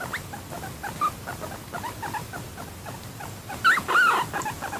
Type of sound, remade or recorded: recorded